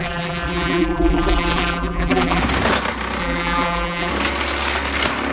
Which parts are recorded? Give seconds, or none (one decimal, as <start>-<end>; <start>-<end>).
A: 2.4-3.2; 4.1-5.3